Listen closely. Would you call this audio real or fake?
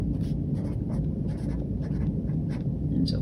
real